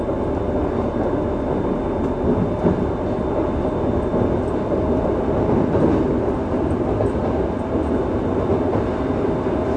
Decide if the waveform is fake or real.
real